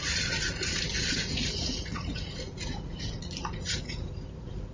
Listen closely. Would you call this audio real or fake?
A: fake